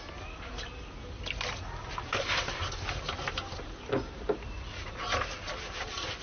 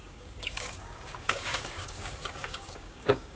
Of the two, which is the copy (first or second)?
second